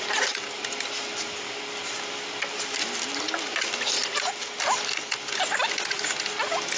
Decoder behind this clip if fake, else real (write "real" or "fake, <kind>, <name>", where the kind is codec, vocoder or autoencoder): real